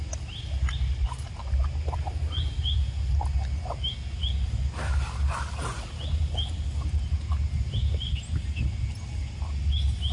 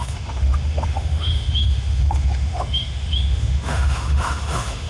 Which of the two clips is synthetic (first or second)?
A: second